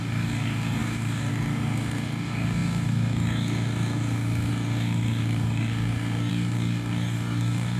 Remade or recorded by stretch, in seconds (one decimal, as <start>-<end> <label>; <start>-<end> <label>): 0.0-7.8 remade